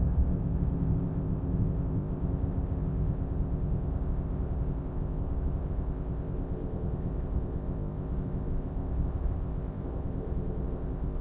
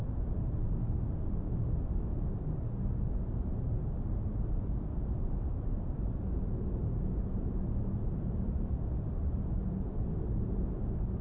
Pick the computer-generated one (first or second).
first